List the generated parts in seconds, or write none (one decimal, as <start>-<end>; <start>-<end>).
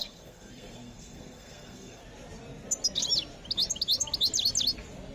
0.0-2.0